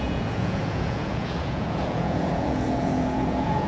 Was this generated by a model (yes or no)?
yes